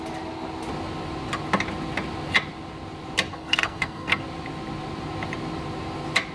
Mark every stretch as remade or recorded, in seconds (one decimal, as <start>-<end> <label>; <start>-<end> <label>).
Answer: 0.0-3.3 recorded; 3.3-4.2 remade; 4.2-6.3 recorded

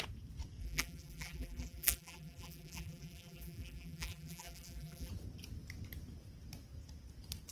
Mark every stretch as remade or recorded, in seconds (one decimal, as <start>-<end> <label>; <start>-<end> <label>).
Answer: 0.0-0.6 recorded; 0.6-5.1 remade; 5.1-7.5 recorded

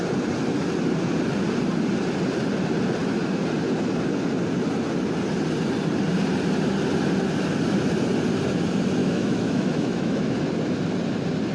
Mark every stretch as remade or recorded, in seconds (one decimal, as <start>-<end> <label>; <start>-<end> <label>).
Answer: 0.0-9.0 recorded; 9.0-10.2 remade; 10.2-11.5 recorded

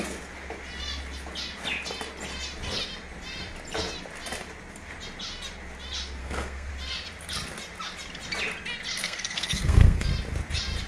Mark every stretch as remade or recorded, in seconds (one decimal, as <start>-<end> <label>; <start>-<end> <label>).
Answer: 0.0-6.2 recorded; 6.2-6.7 remade; 6.7-9.0 recorded; 9.0-10.1 remade; 10.1-10.9 recorded